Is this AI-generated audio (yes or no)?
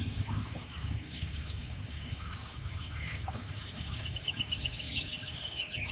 yes